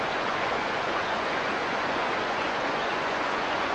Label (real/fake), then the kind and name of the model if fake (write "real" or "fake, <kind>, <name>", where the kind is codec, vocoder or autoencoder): fake, vocoder, Vocos